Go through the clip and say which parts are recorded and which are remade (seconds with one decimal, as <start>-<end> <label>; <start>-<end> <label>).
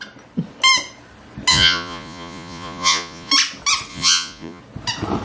0.0-1.5 recorded; 1.5-3.3 remade; 3.3-3.9 recorded; 3.9-4.6 remade; 4.6-5.2 recorded